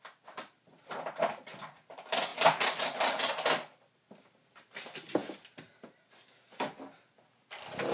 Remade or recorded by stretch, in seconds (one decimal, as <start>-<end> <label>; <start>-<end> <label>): 0.0-7.9 recorded